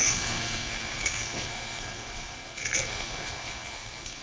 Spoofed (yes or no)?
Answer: yes